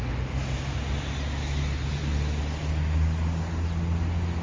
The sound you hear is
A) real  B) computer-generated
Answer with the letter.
A